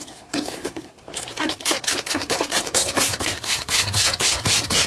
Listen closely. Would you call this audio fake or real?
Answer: fake